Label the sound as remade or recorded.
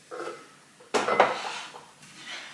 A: recorded